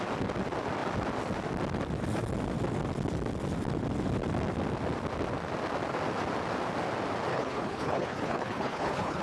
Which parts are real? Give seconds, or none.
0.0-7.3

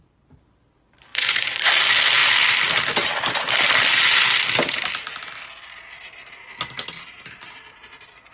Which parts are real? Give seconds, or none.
0.0-1.1; 1.7-8.3

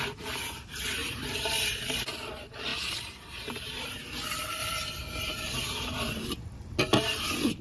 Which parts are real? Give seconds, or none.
0.0-1.0; 2.1-2.7; 4.0-7.6

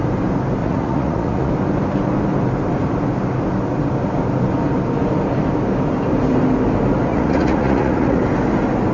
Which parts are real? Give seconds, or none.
0.0-0.6; 1.5-7.1; 8.2-8.9

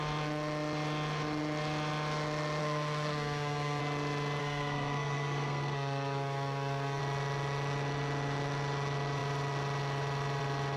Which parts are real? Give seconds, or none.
0.0-2.6; 3.8-4.4; 7.0-10.8